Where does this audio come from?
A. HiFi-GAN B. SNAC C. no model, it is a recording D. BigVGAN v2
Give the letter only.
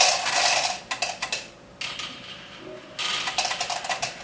C